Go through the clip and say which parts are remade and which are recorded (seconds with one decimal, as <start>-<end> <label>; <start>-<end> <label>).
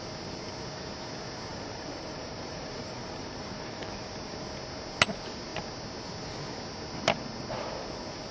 0.0-1.5 recorded; 1.5-3.9 remade; 3.9-8.3 recorded